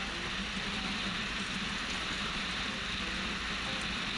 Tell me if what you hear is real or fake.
real